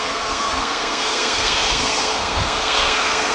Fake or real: fake